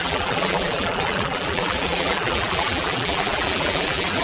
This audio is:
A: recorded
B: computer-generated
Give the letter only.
B